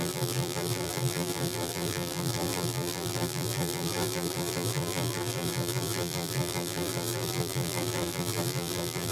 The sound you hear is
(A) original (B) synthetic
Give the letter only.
B